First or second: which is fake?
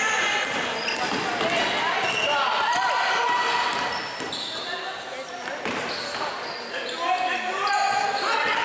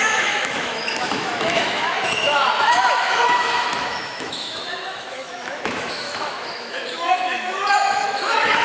second